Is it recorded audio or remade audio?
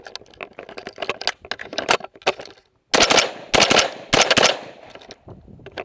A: recorded